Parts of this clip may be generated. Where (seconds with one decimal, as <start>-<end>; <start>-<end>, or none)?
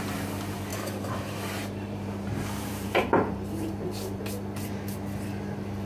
0.7-4.2